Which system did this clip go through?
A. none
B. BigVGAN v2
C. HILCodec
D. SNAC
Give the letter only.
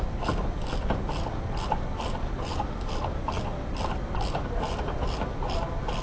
A